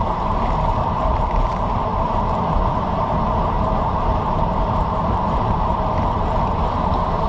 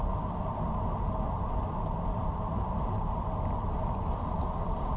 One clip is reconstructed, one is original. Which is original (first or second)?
second